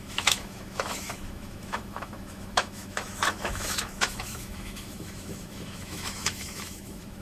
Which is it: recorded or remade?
remade